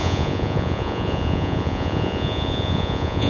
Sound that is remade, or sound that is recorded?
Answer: remade